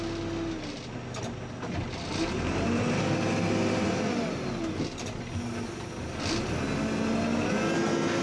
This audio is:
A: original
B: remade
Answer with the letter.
A